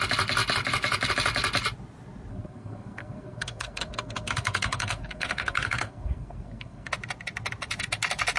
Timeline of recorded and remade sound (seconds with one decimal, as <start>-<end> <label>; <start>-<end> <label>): 0.0-2.3 recorded; 2.3-6.9 remade; 6.9-8.4 recorded